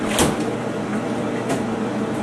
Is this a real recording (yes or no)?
yes